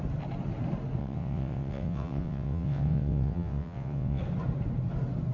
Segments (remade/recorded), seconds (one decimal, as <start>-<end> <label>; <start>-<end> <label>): 0.0-1.0 recorded; 1.0-4.2 remade; 4.2-5.3 recorded